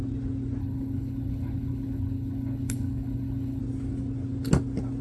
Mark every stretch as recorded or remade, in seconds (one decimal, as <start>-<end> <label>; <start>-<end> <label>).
0.0-0.6 recorded; 0.6-3.6 remade; 3.6-5.0 recorded